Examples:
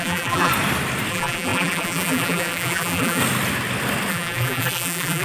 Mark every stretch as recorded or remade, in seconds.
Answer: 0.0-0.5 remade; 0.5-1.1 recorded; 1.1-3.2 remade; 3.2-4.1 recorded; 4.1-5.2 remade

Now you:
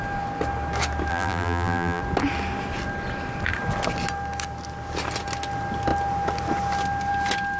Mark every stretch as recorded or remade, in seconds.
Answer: 0.0-1.1 recorded; 1.1-2.0 remade; 2.0-7.6 recorded

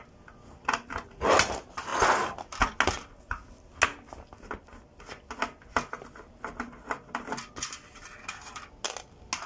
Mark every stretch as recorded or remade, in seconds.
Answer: 0.0-9.5 recorded

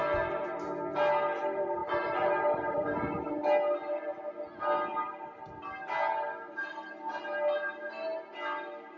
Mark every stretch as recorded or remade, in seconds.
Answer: 0.0-1.8 recorded; 1.8-3.4 remade; 3.4-9.0 recorded